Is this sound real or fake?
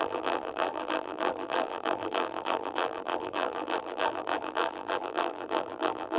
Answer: fake